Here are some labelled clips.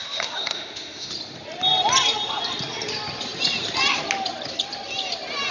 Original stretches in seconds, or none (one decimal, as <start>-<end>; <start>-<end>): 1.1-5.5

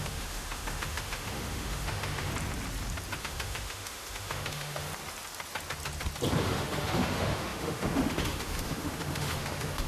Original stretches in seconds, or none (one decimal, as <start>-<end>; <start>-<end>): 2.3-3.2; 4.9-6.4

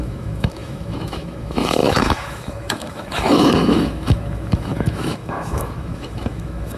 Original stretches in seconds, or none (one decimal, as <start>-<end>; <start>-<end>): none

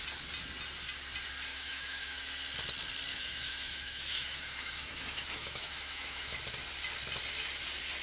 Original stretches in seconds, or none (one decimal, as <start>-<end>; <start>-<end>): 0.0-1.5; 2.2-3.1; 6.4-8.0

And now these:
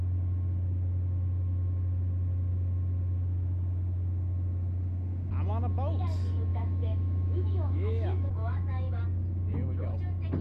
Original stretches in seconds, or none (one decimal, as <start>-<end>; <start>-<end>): 0.0-6.5; 9.0-10.4

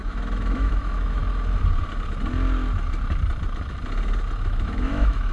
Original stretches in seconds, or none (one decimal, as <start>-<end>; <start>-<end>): 1.2-4.4